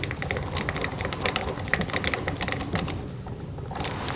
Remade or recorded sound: recorded